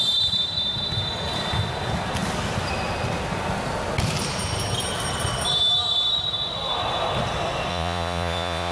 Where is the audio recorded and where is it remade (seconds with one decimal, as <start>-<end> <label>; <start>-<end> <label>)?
0.0-7.7 recorded; 7.7-8.7 remade